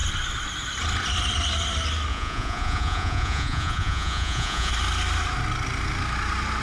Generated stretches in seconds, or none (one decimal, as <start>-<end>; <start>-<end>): 2.1-4.7